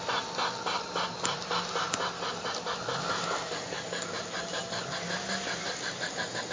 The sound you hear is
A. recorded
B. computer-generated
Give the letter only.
A